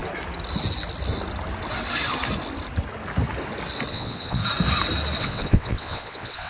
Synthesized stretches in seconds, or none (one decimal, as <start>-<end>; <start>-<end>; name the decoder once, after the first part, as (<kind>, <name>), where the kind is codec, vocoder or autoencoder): 3.9-4.4 (vocoder, WaveNeXt); 5.2-6.5